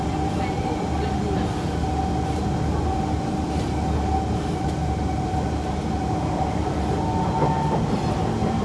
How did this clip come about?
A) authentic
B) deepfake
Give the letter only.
A